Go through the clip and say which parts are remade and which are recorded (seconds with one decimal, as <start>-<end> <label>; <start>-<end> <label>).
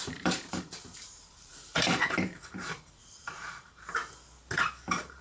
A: 0.0-4.0 remade; 4.0-4.6 recorded; 4.6-5.2 remade